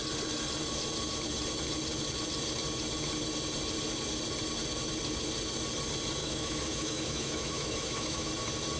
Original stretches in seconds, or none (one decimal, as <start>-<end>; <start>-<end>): 0.0-6.2; 8.3-8.8